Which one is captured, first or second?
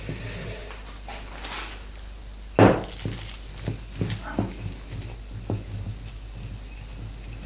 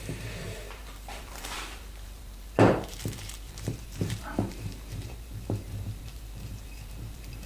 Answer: first